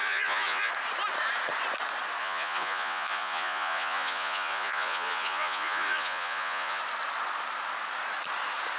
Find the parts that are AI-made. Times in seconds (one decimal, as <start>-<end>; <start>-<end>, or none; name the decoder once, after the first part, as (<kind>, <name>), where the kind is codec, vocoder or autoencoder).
0.0-0.7 (vocoder, Vocos); 2.2-6.8